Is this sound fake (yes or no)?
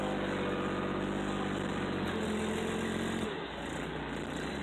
no